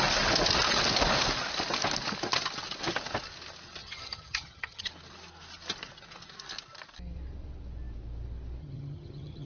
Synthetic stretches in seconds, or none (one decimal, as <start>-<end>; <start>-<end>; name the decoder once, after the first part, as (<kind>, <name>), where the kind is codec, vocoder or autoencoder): 3.8-4.9 (vocoder, HiFi-GAN); 8.6-9.5